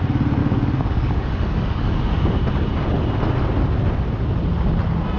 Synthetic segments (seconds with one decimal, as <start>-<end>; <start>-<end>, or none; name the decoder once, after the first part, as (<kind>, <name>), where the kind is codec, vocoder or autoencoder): 0.4-2.3 (codec, DAC)